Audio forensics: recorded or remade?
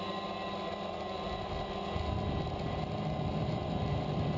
recorded